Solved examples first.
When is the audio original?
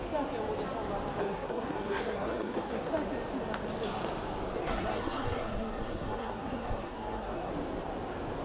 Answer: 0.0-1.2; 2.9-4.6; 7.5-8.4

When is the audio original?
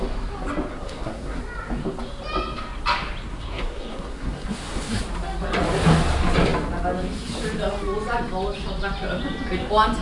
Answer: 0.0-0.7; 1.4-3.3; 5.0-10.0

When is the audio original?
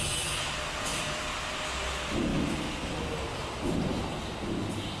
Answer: 0.0-5.0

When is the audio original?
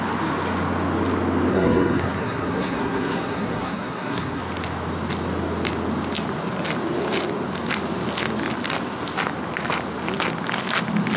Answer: 0.0-1.5; 4.4-11.2